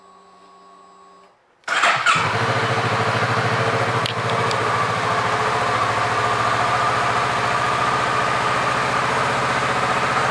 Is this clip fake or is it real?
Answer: real